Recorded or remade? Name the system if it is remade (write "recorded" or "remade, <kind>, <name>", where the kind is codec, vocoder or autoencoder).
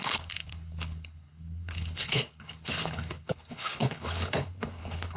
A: remade, codec, HILCodec